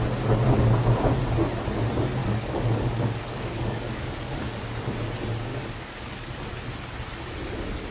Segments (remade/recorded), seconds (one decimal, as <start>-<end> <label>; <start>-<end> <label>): 0.0-2.2 recorded; 2.2-4.6 remade; 4.6-5.5 recorded; 5.5-6.3 remade; 6.3-7.9 recorded